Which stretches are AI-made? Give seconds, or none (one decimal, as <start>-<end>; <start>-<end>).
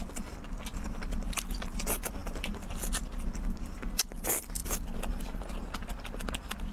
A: none